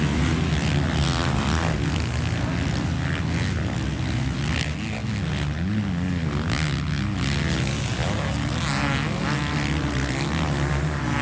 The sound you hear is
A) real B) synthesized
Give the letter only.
A